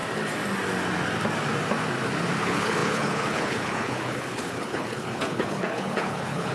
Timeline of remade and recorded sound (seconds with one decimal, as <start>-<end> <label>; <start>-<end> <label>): 0.0-2.4 recorded; 2.4-6.5 remade